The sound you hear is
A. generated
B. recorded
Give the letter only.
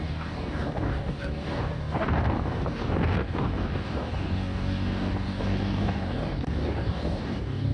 A